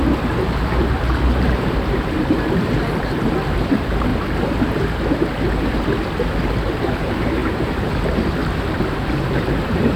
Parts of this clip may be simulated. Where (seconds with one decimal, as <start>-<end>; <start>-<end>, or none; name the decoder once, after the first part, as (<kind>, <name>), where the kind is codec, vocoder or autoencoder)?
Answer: 0.0-4.1 (vocoder, BigVGAN v2); 6.4-8.4; 8.9-10.0